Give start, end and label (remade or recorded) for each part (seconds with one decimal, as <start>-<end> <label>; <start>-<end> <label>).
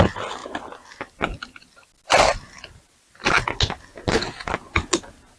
0.0-5.4 recorded